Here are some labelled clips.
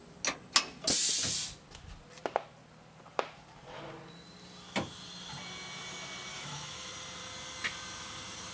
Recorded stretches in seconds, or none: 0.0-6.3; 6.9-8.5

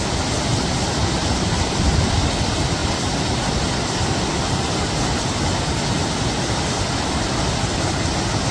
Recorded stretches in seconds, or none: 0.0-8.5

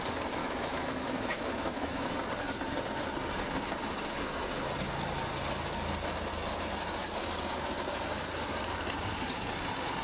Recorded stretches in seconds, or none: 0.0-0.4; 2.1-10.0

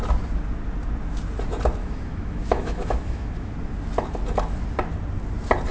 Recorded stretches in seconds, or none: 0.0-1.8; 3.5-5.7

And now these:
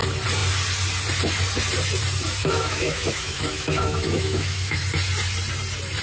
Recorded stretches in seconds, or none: 0.0-2.4; 4.8-6.0

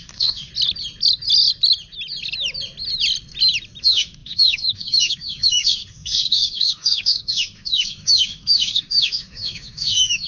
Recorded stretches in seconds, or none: 0.5-3.8

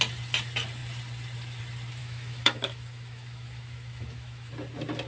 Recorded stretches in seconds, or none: 0.0-2.0; 4.5-5.1